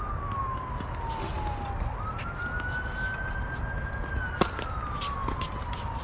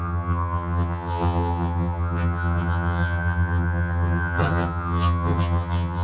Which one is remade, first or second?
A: second